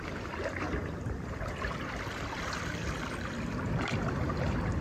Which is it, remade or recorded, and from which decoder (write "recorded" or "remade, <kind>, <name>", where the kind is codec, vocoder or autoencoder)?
remade, vocoder, BigVGAN v2